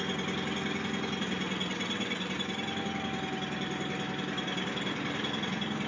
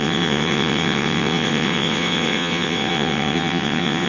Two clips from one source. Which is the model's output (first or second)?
second